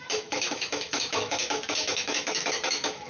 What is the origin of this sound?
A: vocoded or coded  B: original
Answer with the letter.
A